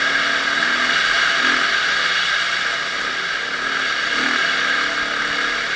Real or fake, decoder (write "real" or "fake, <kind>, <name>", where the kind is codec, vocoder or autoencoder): real